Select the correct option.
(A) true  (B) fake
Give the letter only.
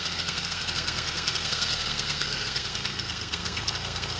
B